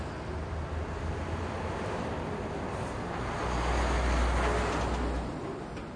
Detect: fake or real real